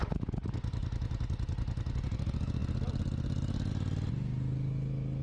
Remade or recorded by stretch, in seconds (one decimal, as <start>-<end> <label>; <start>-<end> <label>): 0.0-5.2 recorded